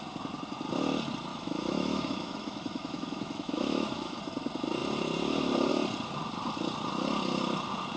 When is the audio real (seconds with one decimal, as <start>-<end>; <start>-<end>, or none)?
0.0-1.3; 4.2-8.0